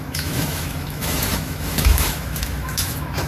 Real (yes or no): no